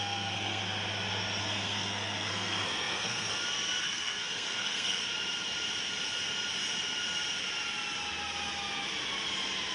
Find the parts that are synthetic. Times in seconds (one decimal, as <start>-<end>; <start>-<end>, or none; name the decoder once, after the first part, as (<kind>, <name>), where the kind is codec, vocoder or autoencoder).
0.0-0.6 (codec, SNAC); 1.4-3.3; 3.8-5.0